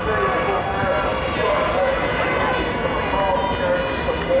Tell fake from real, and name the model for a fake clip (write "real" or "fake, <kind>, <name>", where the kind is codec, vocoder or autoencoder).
real